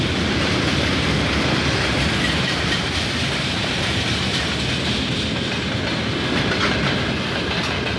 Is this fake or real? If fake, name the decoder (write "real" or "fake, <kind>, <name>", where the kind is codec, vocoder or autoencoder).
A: real